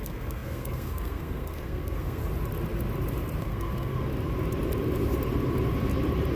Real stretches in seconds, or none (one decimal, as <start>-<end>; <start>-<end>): 2.2-3.4; 4.1-6.4